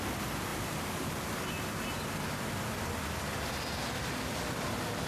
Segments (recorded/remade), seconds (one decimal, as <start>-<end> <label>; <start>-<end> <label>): 0.0-5.1 recorded